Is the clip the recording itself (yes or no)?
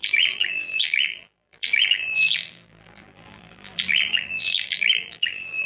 no